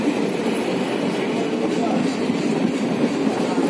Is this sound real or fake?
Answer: real